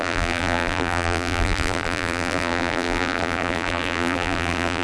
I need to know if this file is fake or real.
fake